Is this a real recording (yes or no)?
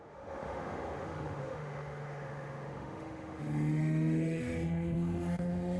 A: no